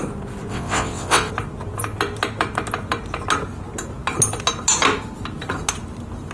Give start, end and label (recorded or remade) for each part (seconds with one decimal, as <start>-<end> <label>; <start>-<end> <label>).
0.0-0.5 recorded; 0.5-1.3 remade; 1.3-6.3 recorded